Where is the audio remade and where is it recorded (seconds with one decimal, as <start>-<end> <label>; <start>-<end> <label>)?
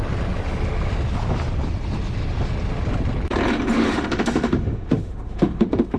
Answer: 0.0-3.7 recorded; 3.7-6.0 remade